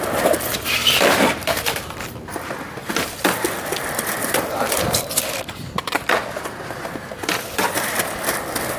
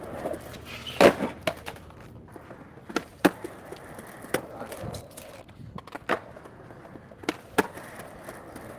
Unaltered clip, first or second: second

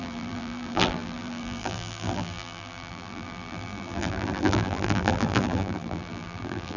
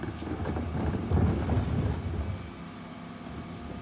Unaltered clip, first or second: second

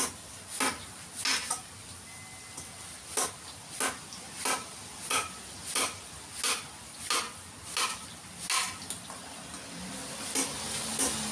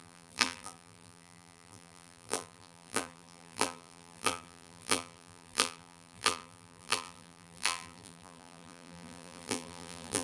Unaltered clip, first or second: first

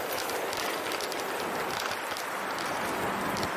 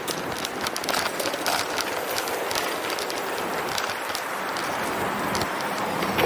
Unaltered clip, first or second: first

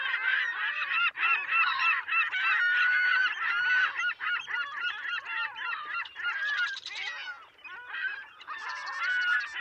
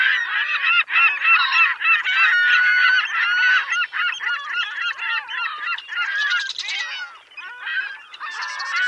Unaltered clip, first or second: second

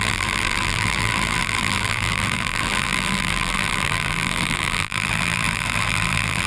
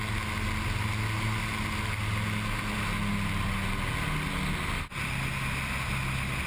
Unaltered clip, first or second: second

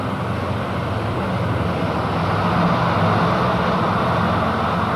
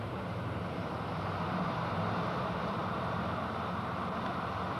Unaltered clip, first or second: first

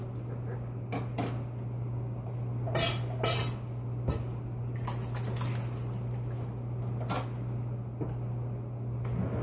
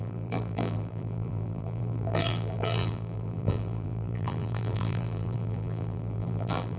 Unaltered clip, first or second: first